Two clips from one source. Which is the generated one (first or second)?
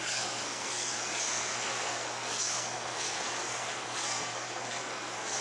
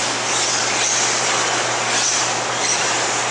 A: first